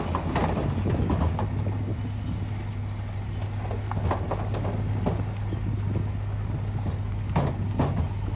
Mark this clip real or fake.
real